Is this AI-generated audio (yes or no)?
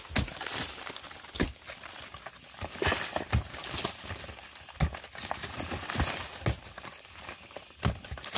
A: no